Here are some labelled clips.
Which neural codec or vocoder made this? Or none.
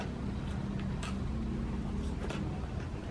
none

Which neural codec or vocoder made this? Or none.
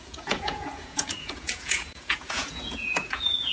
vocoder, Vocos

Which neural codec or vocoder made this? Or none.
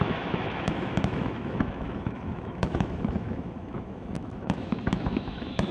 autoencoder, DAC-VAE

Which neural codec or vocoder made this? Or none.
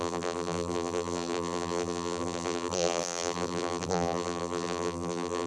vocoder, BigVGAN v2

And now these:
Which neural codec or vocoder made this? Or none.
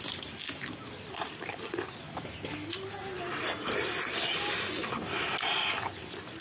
none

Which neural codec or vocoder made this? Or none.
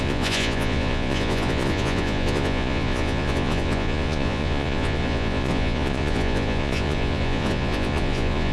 vocoder, Vocos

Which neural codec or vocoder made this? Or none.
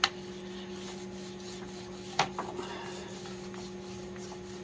none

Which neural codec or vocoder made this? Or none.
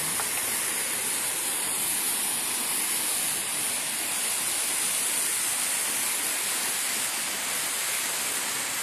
none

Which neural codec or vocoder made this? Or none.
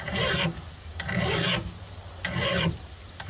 none